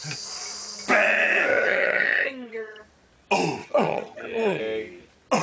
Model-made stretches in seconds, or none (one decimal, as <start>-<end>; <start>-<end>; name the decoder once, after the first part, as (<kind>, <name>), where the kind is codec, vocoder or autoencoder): 1.5-2.8 (vocoder, HiFi-GAN); 3.6-4.6